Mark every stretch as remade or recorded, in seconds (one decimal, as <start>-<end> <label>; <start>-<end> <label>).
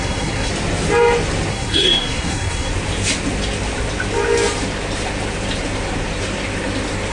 0.0-0.5 remade; 0.5-1.5 recorded; 1.5-2.7 remade; 2.7-7.1 recorded